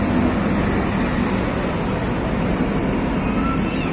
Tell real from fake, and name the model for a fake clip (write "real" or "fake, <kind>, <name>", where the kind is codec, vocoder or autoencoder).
real